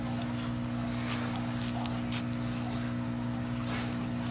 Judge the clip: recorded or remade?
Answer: recorded